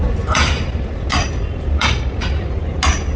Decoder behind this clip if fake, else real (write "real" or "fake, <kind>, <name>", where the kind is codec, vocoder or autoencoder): real